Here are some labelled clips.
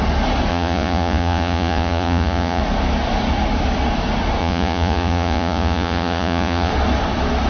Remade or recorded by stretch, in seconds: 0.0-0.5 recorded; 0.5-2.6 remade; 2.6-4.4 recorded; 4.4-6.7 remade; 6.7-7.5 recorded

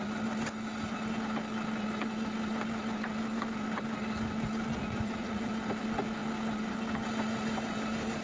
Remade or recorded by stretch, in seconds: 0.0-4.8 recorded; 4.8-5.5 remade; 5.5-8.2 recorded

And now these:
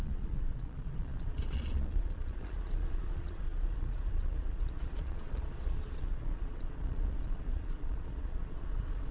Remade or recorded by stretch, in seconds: 0.0-9.1 remade

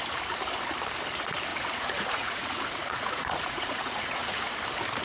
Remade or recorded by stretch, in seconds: 0.0-1.5 recorded; 1.5-4.5 remade; 4.5-5.0 recorded